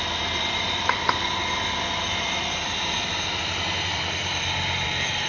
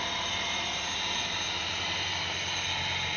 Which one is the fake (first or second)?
first